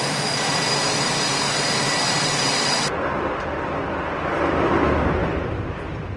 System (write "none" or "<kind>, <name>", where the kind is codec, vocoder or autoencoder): none